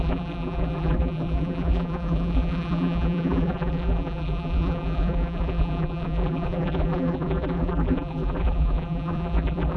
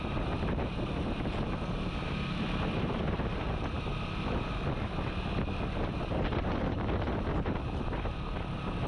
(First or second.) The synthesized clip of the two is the first